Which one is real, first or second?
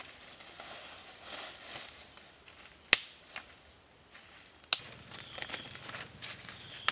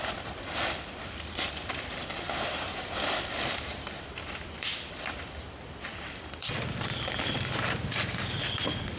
first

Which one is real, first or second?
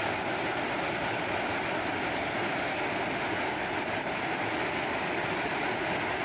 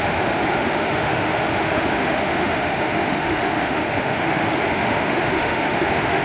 first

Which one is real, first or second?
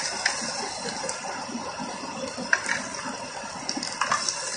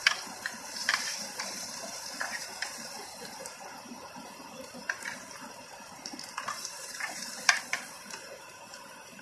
first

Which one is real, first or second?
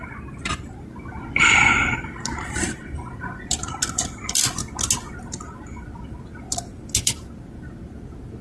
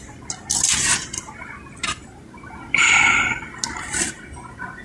second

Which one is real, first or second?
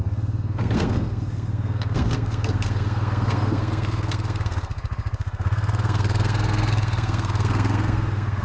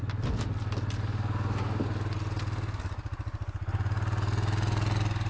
second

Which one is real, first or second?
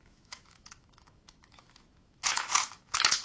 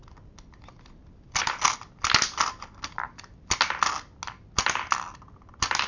second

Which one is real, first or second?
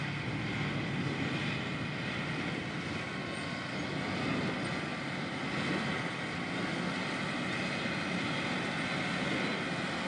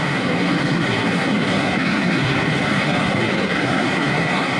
first